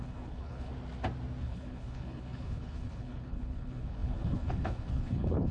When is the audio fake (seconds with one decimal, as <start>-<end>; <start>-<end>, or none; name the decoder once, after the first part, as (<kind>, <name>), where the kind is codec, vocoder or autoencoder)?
0.0-0.7 (codec, HILCodec); 1.4-5.5